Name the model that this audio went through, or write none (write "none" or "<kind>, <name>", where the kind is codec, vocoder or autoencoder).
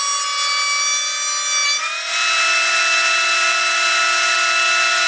none